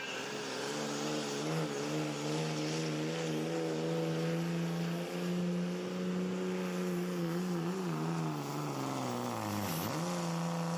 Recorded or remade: recorded